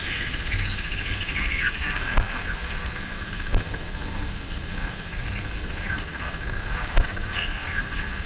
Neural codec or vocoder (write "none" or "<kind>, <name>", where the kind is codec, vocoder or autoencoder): codec, SNAC